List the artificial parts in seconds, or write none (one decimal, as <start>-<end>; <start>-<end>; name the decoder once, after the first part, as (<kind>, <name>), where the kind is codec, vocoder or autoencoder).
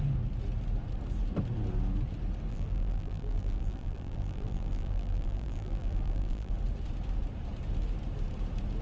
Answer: 2.5-6.5 (vocoder, BigVGAN v2)